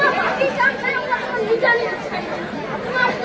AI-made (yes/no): no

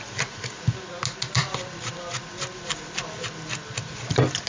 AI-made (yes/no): no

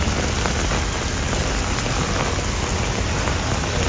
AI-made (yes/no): no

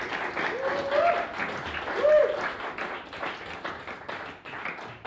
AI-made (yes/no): no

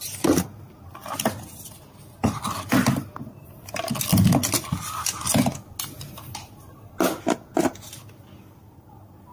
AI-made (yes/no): no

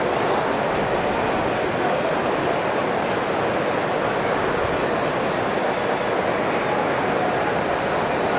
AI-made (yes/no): no